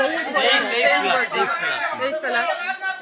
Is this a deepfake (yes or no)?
no